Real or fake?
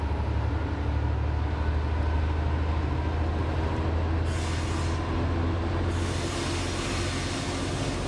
real